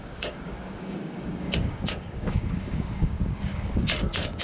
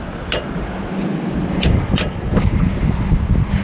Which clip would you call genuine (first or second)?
second